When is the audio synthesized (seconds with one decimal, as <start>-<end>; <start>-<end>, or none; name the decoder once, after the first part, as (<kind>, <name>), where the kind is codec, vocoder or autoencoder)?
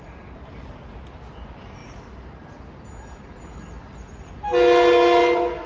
none